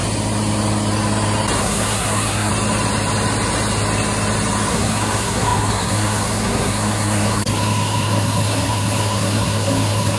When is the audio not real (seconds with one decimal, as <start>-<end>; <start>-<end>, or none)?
1.6-2.5; 4.7-10.2